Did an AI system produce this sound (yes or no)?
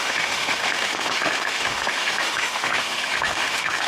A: yes